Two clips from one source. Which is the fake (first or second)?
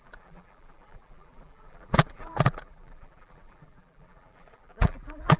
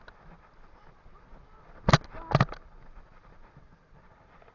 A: first